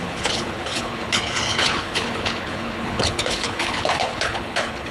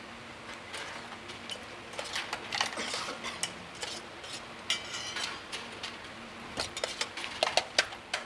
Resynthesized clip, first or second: first